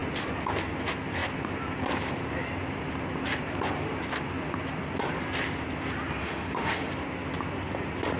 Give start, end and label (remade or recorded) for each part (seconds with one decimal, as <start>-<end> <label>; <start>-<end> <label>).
0.0-6.2 recorded; 6.2-6.9 remade; 6.9-8.2 recorded